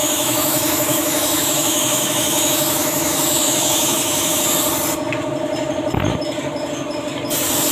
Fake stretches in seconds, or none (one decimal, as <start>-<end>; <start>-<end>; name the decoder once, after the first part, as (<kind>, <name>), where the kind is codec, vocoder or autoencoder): 0.0-4.4 (autoencoder, DAC-VAE)